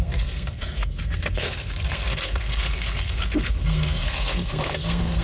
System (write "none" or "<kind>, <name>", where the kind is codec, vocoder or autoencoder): codec, SNAC